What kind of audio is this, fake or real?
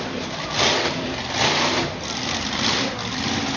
real